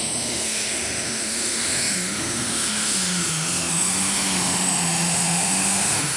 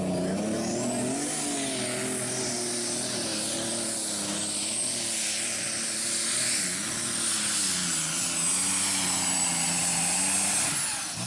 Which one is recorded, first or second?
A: second